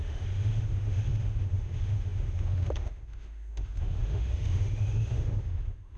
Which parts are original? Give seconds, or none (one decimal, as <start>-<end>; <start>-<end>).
none